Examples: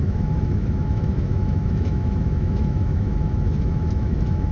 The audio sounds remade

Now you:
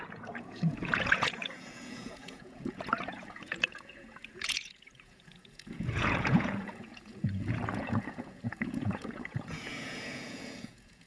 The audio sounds remade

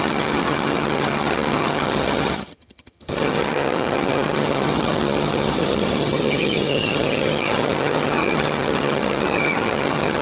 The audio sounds remade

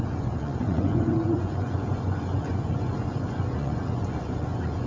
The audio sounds remade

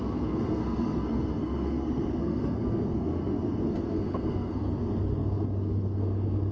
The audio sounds remade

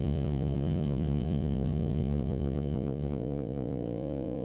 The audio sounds remade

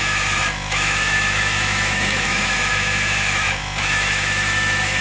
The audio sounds remade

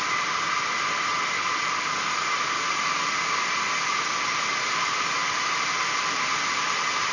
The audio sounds recorded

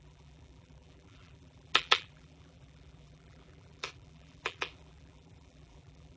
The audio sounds remade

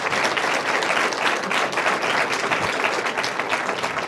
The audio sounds recorded